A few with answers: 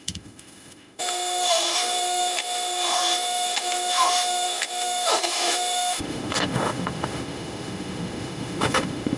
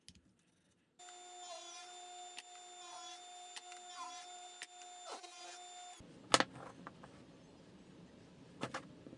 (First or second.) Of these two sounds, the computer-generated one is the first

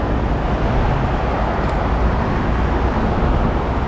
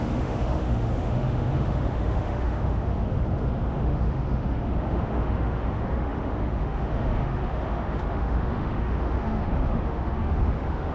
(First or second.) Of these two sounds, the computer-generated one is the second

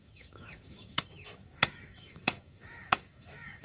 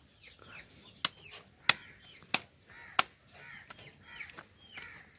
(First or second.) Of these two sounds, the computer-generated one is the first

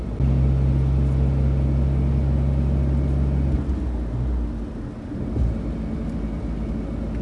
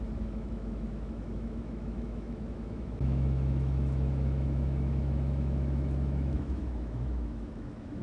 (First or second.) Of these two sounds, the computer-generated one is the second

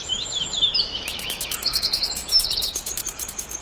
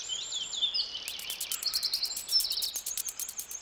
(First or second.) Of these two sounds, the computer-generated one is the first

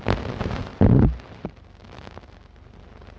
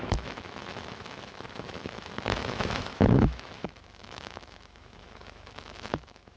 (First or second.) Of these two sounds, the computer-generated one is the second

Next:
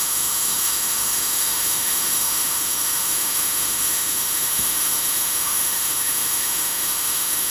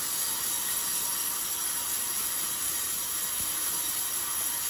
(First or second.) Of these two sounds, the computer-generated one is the first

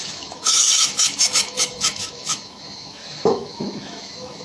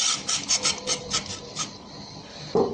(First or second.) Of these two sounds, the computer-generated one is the first